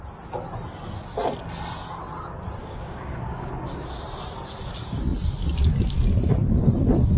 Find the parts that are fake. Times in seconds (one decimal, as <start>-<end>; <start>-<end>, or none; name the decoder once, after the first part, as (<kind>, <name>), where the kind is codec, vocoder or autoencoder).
2.6-3.6 (codec, DAC)